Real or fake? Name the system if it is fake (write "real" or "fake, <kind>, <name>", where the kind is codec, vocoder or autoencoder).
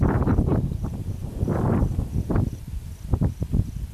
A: real